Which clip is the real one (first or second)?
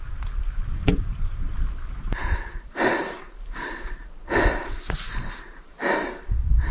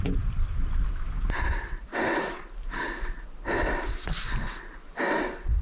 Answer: second